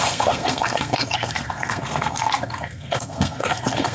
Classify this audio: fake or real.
fake